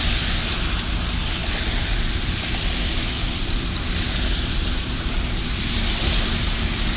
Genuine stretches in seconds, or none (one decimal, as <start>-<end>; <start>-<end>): 0.0-1.4; 5.6-7.0